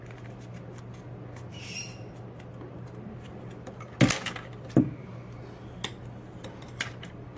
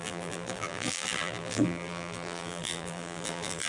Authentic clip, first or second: first